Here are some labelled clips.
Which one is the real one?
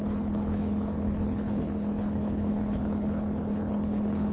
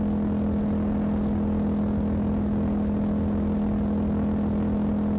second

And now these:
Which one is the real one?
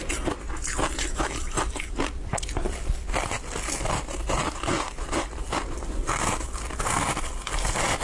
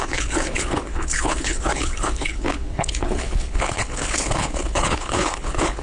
first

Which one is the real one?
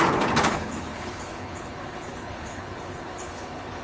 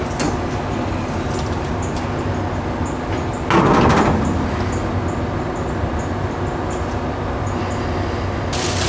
second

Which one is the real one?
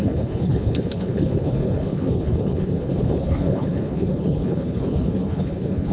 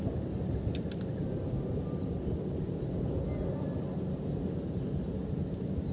second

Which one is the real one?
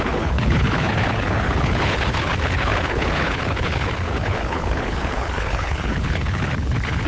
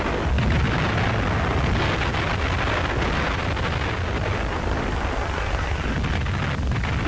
second